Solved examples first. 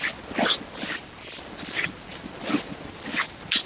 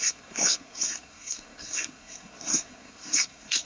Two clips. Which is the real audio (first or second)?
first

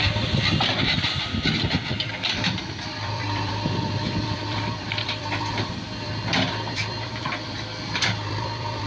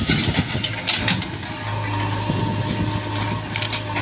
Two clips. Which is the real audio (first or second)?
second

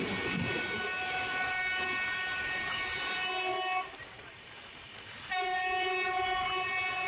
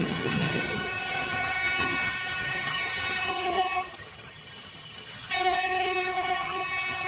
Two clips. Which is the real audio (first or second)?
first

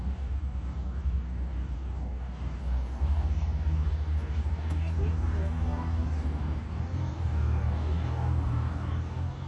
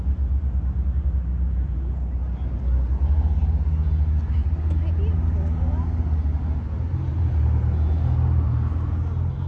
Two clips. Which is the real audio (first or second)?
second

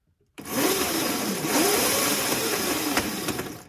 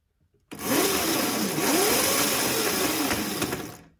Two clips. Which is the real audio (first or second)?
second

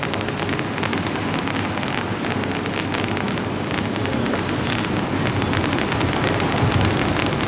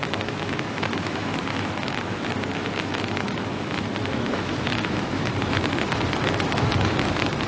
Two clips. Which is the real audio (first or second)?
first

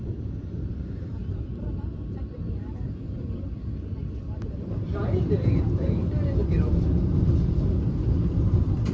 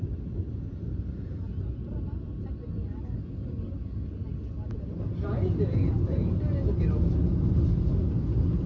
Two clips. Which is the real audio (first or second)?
second